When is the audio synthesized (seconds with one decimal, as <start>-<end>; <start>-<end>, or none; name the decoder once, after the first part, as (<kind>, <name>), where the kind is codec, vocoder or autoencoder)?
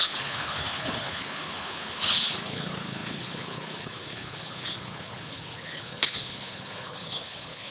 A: 0.0-7.7 (codec, HILCodec)